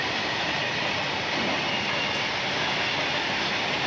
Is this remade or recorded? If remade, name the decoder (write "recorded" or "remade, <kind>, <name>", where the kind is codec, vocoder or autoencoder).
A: recorded